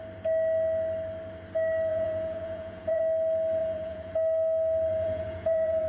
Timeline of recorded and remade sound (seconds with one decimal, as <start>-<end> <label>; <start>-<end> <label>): 0.0-1.9 recorded; 1.9-3.0 remade; 3.0-3.6 recorded; 3.6-4.1 remade; 4.1-4.9 recorded; 4.9-5.9 remade